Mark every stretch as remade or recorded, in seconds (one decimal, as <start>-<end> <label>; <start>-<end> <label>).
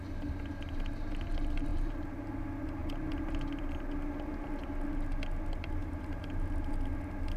0.0-1.7 recorded; 1.7-2.3 remade; 2.3-5.8 recorded; 5.8-6.7 remade; 6.7-7.4 recorded